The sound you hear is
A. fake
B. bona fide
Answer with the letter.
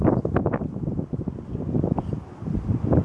B